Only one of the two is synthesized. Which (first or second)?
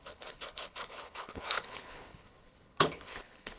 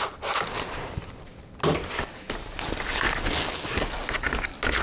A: first